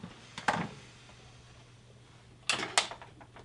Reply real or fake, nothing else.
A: real